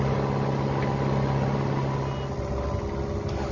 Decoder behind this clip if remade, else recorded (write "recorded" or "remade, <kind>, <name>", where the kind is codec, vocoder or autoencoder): recorded